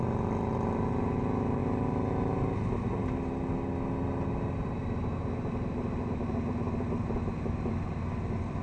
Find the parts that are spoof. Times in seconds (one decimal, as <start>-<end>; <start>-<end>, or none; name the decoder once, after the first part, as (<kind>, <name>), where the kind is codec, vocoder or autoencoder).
none